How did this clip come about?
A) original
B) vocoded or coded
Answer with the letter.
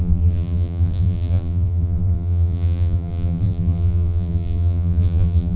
B